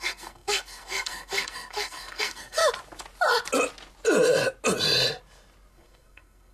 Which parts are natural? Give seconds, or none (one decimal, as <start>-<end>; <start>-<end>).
2.6-5.7